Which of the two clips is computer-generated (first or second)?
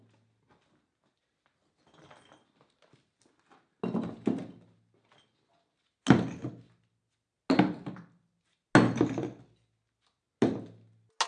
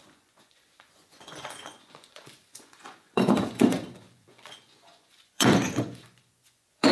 second